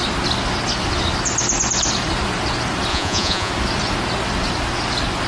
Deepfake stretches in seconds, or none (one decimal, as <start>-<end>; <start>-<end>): 2.9-3.5